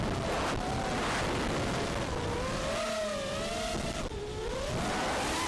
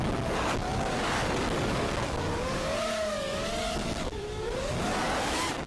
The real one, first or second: first